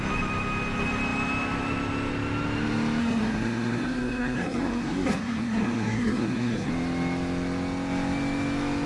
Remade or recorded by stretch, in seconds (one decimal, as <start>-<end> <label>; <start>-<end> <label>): 0.0-3.0 recorded; 3.0-6.7 remade; 6.7-8.9 recorded